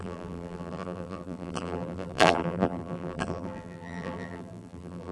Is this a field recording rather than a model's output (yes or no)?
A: no